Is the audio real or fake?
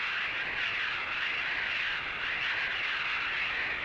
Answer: real